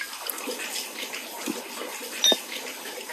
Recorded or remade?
recorded